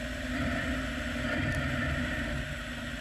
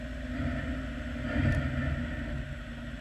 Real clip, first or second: second